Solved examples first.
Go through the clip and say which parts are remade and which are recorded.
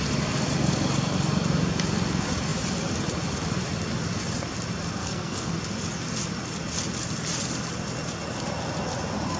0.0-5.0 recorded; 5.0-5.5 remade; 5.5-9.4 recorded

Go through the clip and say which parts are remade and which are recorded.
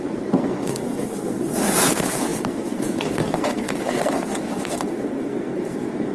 0.0-6.1 remade